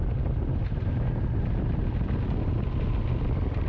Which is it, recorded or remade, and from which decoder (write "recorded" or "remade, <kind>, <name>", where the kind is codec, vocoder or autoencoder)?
recorded